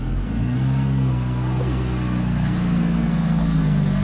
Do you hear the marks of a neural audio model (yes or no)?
yes